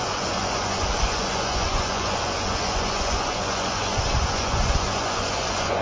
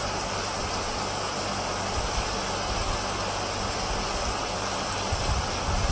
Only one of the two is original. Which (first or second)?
second